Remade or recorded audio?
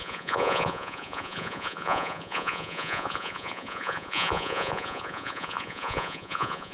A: remade